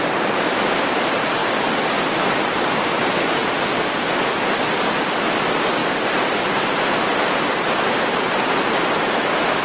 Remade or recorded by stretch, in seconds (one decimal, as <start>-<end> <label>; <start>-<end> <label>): 0.0-9.6 recorded